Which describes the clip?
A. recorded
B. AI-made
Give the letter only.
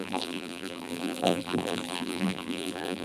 B